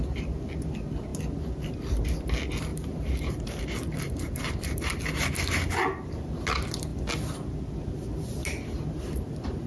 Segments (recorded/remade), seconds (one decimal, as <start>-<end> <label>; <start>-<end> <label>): 0.0-2.7 recorded; 2.7-5.0 remade; 5.0-9.7 recorded